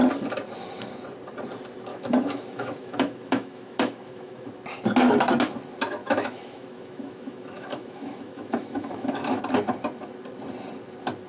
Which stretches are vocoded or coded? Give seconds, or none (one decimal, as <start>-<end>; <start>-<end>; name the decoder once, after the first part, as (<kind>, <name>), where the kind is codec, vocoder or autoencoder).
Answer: 1.9-4.5 (autoencoder, DAC-VAE); 6.0-9.4